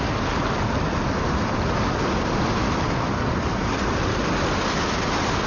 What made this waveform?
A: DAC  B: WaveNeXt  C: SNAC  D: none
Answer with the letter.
D